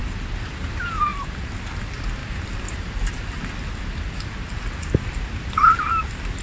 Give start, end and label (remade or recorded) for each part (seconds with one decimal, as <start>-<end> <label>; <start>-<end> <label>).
0.0-6.4 recorded